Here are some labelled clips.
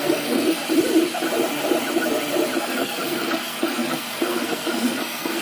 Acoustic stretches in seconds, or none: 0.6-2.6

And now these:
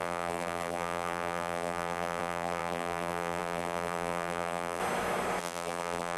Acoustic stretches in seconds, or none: 4.8-5.4

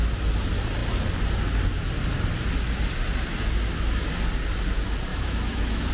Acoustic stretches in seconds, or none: 0.0-5.1

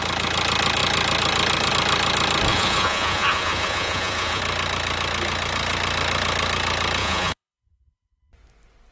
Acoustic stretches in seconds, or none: 0.0-2.5; 4.4-7.0; 8.2-8.9

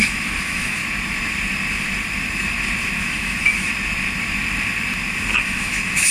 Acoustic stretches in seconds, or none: 0.8-3.0; 3.7-5.4

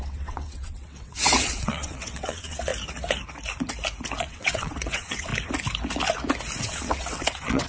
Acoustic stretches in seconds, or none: 2.7-4.2; 5.3-6.6

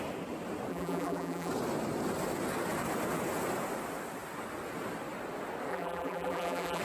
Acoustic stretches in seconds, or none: 0.0-0.7; 1.5-5.7

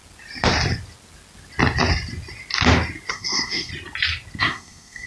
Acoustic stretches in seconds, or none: 0.0-3.1; 3.7-4.4